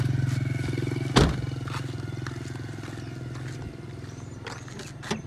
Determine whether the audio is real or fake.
real